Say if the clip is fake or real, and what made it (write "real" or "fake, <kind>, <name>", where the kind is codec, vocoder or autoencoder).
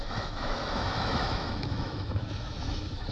fake, autoencoder, DAC-VAE